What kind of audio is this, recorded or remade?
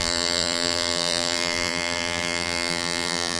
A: remade